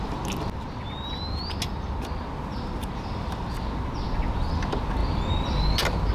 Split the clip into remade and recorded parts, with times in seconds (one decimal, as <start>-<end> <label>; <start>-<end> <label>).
0.0-6.1 recorded